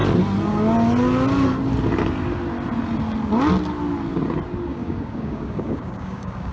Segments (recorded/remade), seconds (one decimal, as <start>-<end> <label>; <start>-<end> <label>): 0.0-4.7 recorded; 4.7-6.5 remade